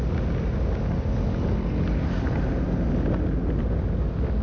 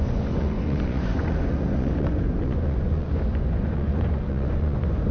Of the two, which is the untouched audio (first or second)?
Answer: first